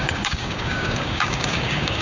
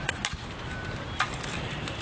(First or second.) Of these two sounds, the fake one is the first